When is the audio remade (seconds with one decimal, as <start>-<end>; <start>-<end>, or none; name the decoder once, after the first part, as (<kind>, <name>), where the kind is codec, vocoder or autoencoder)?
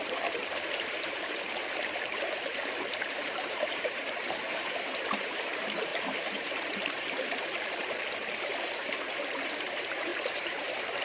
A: 0.0-11.0 (vocoder, BigVGAN v2)